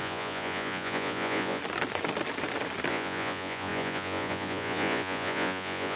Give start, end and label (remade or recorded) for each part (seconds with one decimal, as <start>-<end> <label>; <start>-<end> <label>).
0.0-1.6 remade; 1.6-2.9 recorded; 2.9-6.0 remade